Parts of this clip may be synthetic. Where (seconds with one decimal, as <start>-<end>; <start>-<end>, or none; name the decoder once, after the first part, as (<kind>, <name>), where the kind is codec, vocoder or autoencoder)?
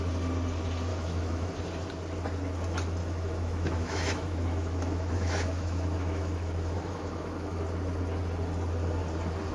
0.9-1.6 (autoencoder, DAC-VAE); 3.0-7.6